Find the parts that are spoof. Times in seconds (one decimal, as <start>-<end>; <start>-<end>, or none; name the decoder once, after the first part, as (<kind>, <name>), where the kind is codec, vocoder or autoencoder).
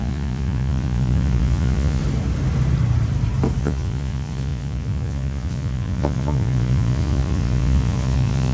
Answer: 0.0-2.0 (vocoder, Vocos); 3.6-8.5